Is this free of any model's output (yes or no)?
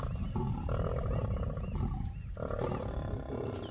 yes